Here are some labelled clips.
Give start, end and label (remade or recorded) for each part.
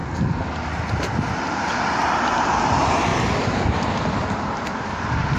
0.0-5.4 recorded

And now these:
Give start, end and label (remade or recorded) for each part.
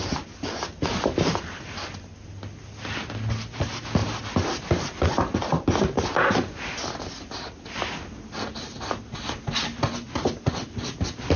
0.0-11.4 recorded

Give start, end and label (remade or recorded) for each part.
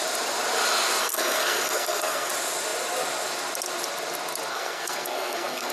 0.0-1.0 recorded; 1.0-2.3 remade; 2.3-4.5 recorded; 4.5-5.7 remade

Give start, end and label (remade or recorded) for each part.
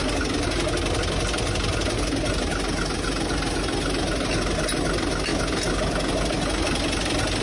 0.0-7.4 recorded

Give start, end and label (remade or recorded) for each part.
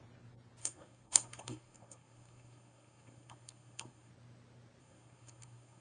0.0-0.6 recorded; 0.6-4.1 remade; 4.1-4.8 recorded; 4.8-5.8 remade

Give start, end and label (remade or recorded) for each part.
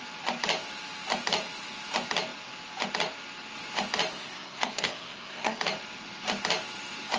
0.0-4.1 recorded; 4.1-5.6 remade; 5.6-7.2 recorded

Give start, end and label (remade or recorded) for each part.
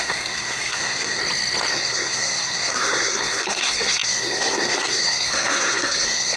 0.0-1.2 remade; 1.2-1.7 recorded; 1.7-6.4 remade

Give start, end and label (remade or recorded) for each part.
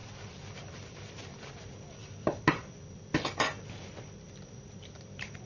0.0-5.5 recorded